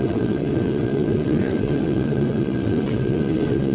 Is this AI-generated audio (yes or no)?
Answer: yes